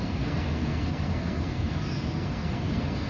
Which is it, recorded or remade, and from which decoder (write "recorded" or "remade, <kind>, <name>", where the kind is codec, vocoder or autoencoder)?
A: remade, codec, SNAC